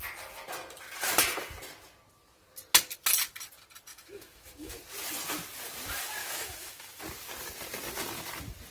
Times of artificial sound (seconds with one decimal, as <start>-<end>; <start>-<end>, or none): 3.9-4.7; 6.2-7.0